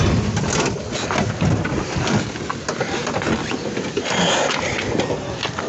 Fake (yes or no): no